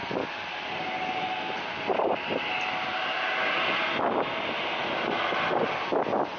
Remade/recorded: recorded